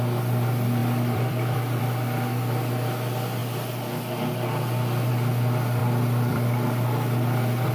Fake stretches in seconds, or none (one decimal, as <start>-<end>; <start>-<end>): 0.8-1.8; 5.8-7.7